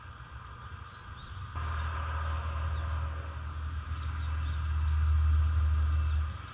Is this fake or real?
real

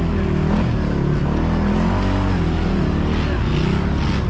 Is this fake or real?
real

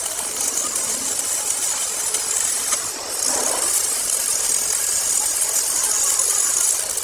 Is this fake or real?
real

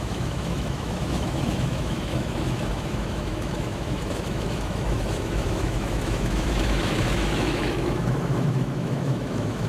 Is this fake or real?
fake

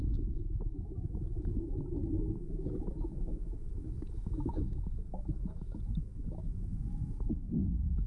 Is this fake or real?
fake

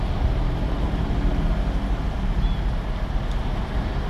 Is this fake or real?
real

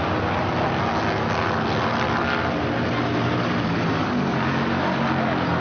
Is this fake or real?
real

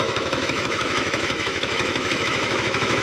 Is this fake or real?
fake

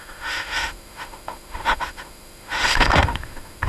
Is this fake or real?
fake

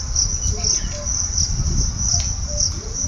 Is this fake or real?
real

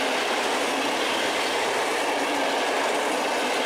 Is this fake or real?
real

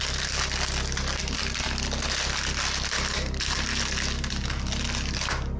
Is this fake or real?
real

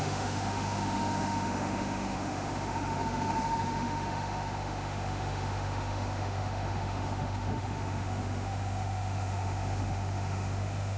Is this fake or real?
fake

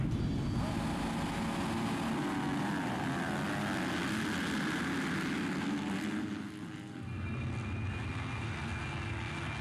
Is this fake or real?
real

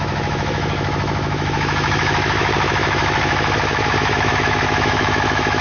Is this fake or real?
fake